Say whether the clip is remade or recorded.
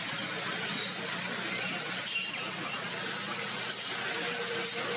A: recorded